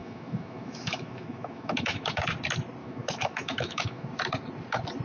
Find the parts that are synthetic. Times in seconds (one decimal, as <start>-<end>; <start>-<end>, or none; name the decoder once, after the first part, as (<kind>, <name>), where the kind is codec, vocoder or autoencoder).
0.0-2.2 (autoencoder, DAC-VAE); 2.8-4.1